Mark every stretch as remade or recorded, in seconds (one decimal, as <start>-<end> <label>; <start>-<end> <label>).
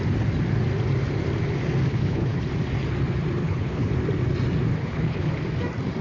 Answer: 0.0-1.9 recorded; 1.9-2.4 remade; 2.4-3.4 recorded; 3.4-3.9 remade; 3.9-4.8 recorded; 4.8-5.3 remade; 5.3-6.0 recorded